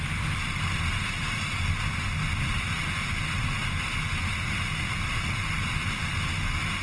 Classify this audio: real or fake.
real